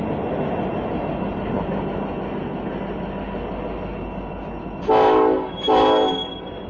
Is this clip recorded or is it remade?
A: recorded